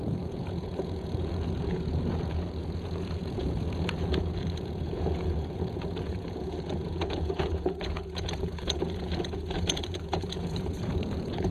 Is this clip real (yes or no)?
no